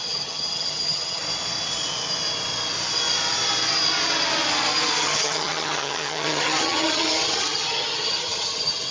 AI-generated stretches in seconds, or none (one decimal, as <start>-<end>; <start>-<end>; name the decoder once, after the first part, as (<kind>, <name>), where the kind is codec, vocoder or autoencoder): 0.0-1.2 (vocoder, HiFi-GAN); 5.0-8.9